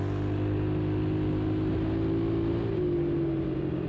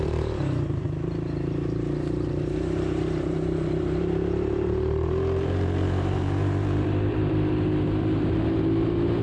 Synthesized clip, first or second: second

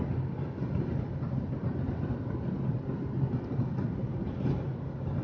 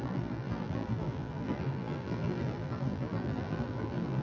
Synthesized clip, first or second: second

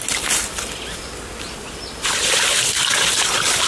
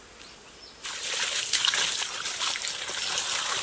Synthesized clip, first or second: first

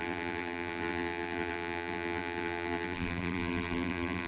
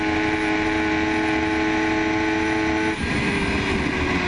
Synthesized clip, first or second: first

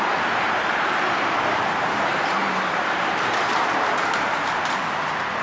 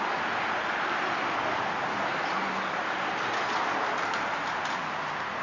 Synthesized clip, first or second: first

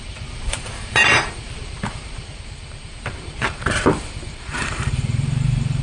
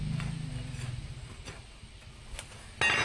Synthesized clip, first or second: first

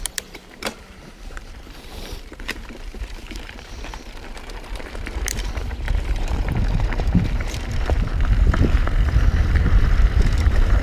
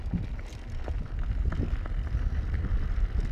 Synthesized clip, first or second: first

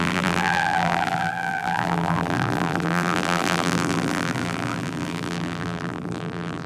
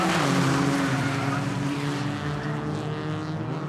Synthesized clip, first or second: first